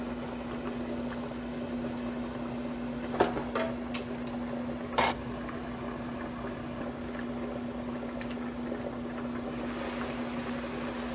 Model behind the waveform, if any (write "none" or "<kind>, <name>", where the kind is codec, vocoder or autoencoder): none